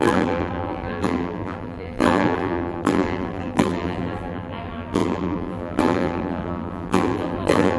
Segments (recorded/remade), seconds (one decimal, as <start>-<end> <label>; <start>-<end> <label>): 0.0-7.8 remade